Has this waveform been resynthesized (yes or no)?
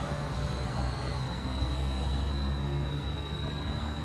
yes